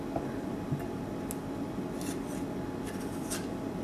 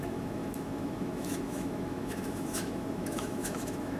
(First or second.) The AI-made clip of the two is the second